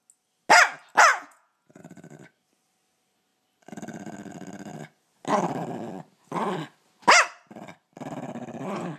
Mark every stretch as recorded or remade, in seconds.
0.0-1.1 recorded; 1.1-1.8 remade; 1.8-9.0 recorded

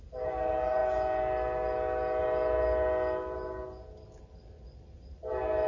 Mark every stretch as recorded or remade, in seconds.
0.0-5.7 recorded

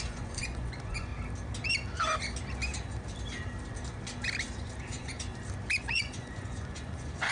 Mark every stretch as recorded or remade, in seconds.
0.0-1.1 remade; 1.1-4.8 recorded; 4.8-5.3 remade; 5.3-5.8 recorded; 5.8-7.3 remade

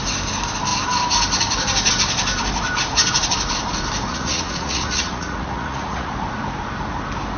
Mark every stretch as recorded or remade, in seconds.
0.0-4.1 recorded; 4.1-6.1 remade; 6.1-7.4 recorded